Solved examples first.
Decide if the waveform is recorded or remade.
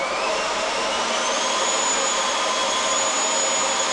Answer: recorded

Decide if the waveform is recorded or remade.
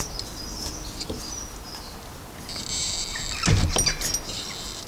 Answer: recorded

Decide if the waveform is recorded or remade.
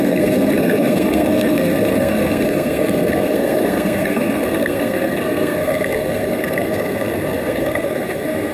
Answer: remade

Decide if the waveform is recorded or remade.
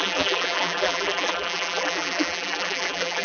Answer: remade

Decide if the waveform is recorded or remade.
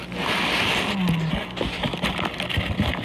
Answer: recorded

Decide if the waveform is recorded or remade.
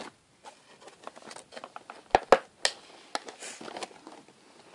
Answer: recorded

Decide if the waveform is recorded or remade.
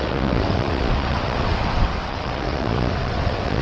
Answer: remade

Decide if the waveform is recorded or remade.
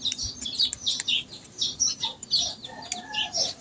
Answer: recorded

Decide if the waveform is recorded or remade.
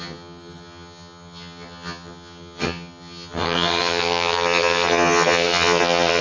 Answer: remade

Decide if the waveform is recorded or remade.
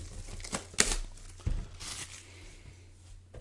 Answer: recorded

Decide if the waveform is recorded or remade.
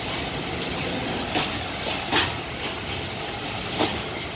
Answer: recorded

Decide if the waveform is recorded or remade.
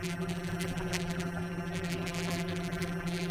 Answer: remade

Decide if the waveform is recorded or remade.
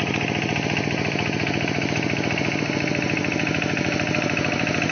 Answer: remade